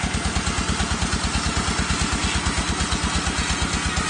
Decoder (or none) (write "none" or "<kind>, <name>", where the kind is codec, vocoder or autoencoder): none